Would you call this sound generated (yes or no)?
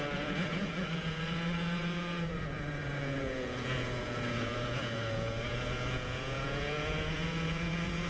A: yes